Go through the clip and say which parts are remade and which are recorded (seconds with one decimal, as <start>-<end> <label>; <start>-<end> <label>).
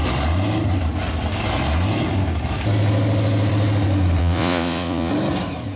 0.0-4.2 recorded; 4.2-5.1 remade; 5.1-5.8 recorded